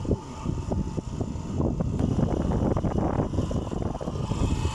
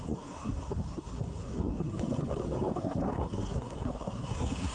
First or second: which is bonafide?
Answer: first